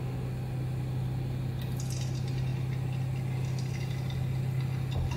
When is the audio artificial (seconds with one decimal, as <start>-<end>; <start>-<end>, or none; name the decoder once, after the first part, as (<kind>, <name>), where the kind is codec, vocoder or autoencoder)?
none